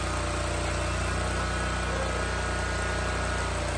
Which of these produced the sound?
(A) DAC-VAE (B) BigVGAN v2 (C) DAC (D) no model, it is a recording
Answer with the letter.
D